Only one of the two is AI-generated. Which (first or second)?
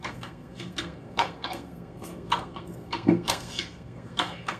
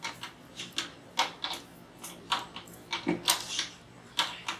first